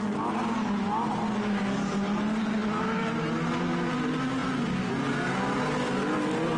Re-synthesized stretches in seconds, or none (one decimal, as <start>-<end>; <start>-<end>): none